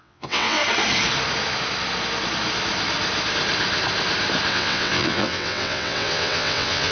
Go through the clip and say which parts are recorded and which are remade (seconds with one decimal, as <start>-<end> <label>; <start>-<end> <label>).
0.0-0.6 remade; 0.6-4.5 recorded; 4.5-6.9 remade